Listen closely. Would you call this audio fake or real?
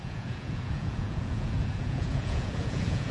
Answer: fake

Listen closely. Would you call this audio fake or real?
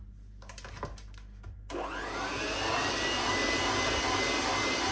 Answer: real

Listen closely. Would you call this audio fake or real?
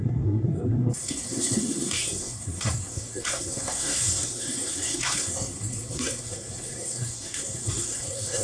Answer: fake